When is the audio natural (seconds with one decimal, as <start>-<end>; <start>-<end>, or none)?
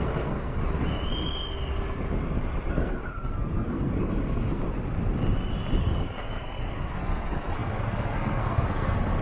0.6-2.7; 4.6-5.8